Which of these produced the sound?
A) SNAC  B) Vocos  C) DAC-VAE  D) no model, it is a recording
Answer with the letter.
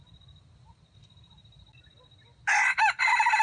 D